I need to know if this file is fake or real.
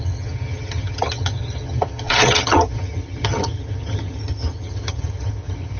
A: fake